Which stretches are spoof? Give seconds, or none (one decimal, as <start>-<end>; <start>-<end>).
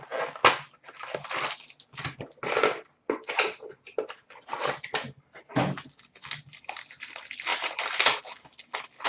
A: 7.5-8.2